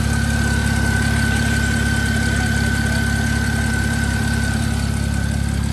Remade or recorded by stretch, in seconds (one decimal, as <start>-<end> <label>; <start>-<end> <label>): 0.0-5.7 recorded